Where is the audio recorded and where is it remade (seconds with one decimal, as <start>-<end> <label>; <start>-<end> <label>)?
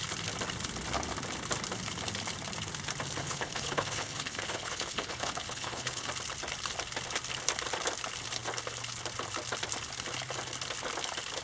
0.0-3.2 recorded; 3.2-6.1 remade; 6.1-11.4 recorded